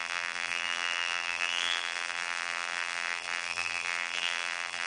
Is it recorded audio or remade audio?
remade